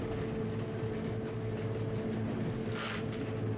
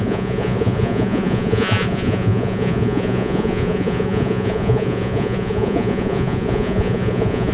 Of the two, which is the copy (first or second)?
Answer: second